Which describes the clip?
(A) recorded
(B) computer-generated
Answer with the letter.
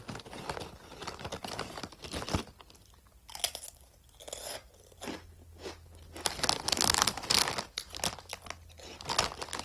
A